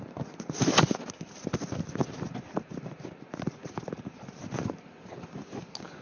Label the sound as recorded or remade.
recorded